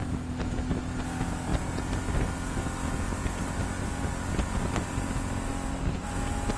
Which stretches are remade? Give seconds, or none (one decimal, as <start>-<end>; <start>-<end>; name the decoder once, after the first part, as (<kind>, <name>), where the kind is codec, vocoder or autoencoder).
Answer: none